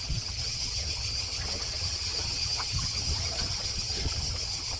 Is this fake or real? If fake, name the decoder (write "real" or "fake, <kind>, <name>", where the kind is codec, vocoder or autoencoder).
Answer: fake, vocoder, HiFi-GAN